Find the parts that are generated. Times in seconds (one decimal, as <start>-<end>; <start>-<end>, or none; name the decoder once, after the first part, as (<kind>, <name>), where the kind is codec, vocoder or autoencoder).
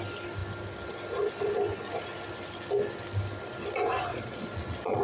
4.1-5.0 (vocoder, Vocos)